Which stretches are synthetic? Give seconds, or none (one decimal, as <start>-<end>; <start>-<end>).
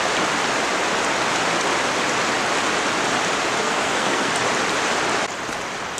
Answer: 3.6-4.3